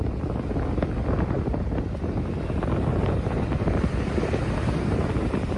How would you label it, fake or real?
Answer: real